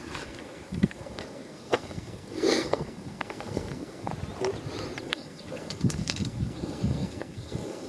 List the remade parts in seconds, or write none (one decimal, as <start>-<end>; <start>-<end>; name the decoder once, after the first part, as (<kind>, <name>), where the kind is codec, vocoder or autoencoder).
0.0-4.1 (codec, SNAC); 5.0-7.9